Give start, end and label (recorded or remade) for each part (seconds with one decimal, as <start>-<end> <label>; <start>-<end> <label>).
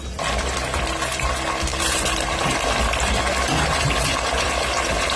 0.0-1.7 recorded; 1.7-4.8 remade; 4.8-5.2 recorded